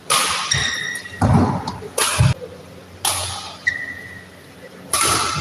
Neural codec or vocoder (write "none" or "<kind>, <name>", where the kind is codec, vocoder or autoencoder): none